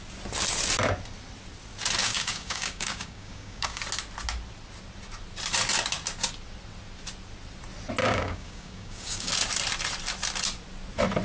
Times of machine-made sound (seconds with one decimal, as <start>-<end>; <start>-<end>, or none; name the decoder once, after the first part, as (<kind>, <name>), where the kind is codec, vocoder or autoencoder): 2.0-3.8 (codec, DAC); 8.0-9.3

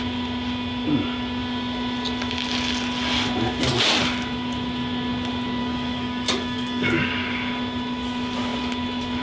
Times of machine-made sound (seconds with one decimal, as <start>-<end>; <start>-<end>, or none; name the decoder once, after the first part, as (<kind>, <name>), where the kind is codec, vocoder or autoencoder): 5.6-7.1 (codec, DAC)